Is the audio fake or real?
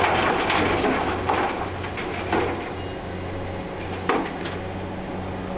real